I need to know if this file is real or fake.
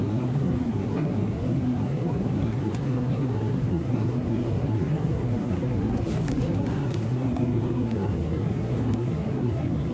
fake